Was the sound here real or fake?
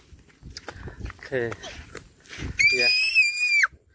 real